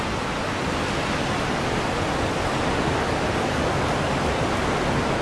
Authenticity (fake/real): real